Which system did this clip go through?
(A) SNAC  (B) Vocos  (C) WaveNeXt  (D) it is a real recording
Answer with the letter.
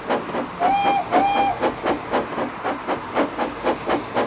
D